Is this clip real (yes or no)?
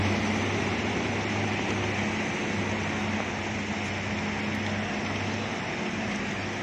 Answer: yes